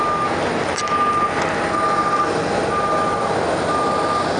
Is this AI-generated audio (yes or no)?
no